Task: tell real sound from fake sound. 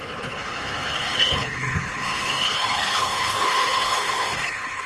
fake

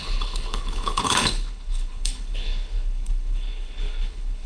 fake